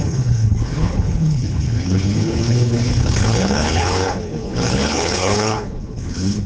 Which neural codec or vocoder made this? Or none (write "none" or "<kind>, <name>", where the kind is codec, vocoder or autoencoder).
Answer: codec, HILCodec